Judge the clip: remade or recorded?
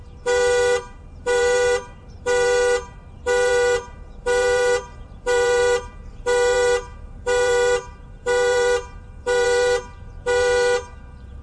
remade